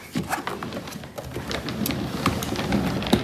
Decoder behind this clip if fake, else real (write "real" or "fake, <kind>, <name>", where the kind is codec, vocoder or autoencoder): real